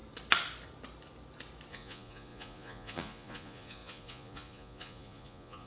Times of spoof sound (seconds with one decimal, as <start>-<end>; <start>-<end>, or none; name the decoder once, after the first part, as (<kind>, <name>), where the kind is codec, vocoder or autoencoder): 1.7-5.7 (vocoder, Vocos)